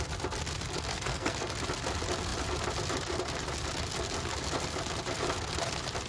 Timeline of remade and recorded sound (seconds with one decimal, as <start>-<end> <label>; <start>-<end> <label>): 0.0-0.9 recorded; 0.9-1.5 remade; 1.5-6.1 recorded